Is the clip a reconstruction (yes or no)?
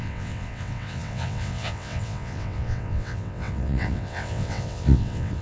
yes